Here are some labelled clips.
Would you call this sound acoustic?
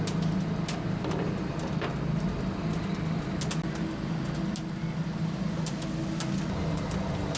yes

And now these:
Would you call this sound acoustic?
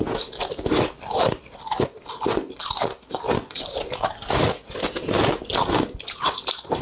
yes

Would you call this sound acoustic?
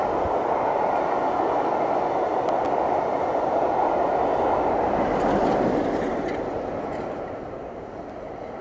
yes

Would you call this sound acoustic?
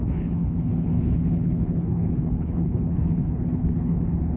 no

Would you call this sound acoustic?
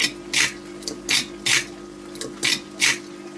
yes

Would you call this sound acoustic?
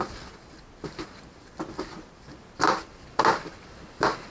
yes